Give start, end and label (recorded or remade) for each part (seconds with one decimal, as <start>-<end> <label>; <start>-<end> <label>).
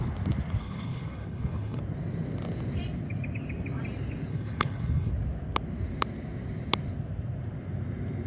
0.0-0.6 recorded; 0.6-1.8 remade; 1.8-4.3 recorded; 4.3-5.1 remade; 5.1-8.3 recorded